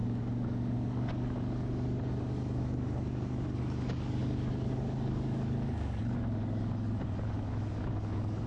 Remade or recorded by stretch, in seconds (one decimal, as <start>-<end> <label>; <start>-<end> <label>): 0.0-8.5 remade